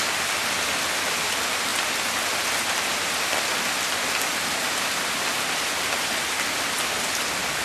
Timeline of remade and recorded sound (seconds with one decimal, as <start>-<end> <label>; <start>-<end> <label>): 0.0-7.6 recorded